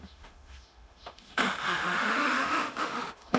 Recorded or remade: remade